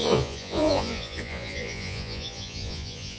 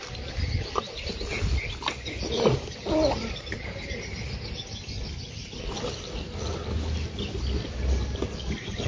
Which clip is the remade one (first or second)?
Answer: first